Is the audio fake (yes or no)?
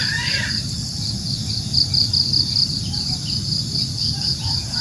yes